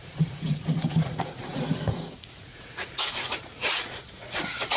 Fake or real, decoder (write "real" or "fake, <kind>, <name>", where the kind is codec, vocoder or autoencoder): fake, vocoder, Vocos